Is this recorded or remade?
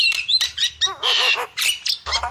remade